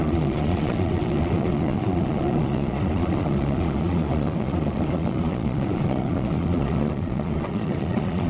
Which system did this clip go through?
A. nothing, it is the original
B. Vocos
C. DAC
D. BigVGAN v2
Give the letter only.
B